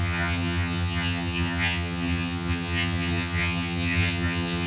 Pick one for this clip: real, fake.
fake